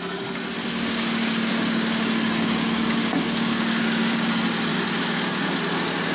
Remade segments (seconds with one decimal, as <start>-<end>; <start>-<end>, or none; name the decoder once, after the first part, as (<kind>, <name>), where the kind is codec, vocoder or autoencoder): 0.6-4.3 (codec, DAC); 4.7-5.5